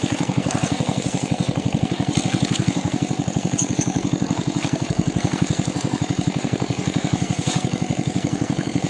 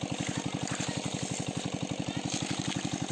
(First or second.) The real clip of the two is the second